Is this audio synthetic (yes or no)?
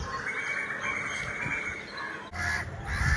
no